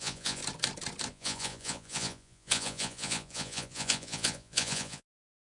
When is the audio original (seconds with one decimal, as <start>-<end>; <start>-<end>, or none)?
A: 0.4-1.1